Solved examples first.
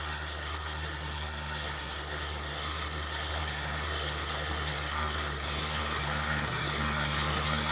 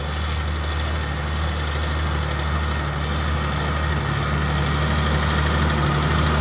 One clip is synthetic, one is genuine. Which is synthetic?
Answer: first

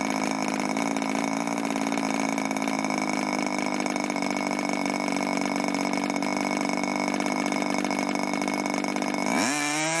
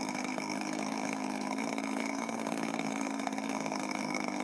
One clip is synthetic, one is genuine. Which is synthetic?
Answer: second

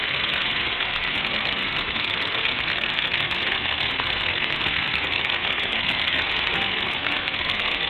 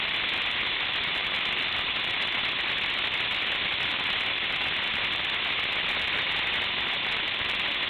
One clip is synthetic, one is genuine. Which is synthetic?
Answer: first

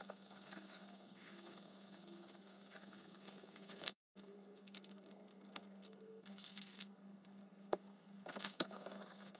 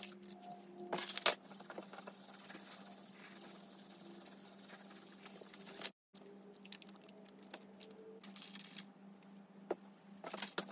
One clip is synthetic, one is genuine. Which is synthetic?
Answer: first